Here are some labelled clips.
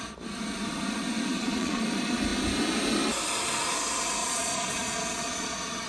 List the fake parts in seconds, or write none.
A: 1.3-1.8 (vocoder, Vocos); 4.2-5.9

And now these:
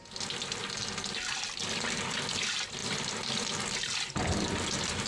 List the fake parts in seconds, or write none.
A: none